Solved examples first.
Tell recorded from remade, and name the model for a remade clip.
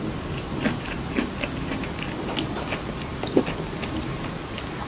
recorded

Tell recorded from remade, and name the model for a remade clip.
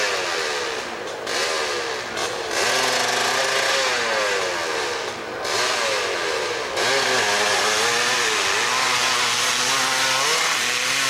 recorded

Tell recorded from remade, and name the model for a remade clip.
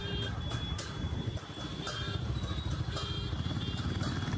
recorded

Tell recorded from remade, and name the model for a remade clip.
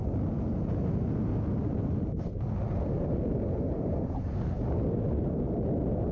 recorded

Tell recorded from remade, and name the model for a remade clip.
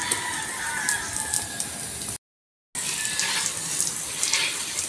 recorded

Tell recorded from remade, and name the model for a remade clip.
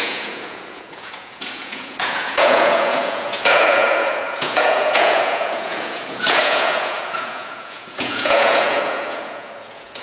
remade, vocoder, Vocos